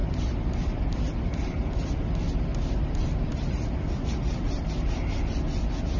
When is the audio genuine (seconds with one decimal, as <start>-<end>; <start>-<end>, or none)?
1.7-2.5; 4.7-6.0